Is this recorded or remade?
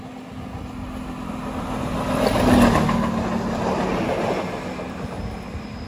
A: recorded